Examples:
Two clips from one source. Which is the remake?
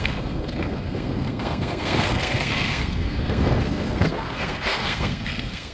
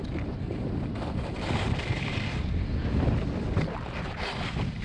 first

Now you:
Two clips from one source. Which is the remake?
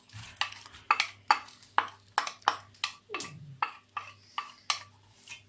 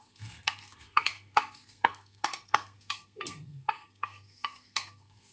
second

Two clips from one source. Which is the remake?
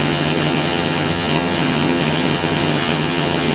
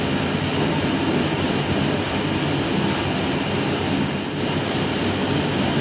first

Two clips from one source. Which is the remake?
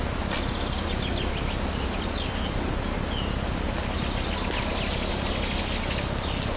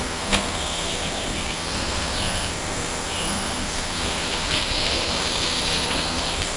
second